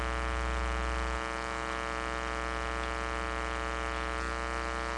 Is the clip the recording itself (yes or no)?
yes